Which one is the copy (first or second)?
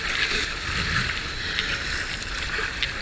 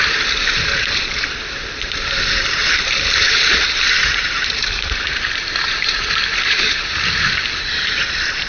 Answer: second